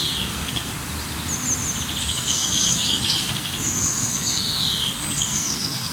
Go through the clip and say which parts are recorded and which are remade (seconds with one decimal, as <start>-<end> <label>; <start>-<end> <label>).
0.0-0.7 remade; 0.7-2.0 recorded; 2.0-5.9 remade